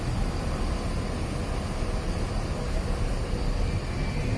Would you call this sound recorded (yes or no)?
yes